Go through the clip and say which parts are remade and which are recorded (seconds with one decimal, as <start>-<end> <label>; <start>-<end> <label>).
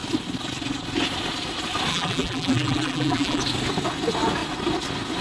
0.0-1.9 recorded; 1.9-3.4 remade; 3.4-5.2 recorded